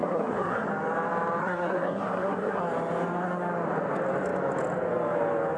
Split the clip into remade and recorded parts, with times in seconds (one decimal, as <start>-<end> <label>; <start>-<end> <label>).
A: 0.0-0.7 remade; 0.7-1.4 recorded; 1.4-2.6 remade; 2.6-5.6 recorded